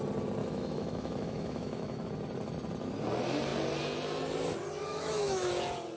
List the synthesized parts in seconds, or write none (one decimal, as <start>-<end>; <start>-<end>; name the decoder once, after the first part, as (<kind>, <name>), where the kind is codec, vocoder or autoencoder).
0.4-2.1 (autoencoder, DAC-VAE); 4.9-5.5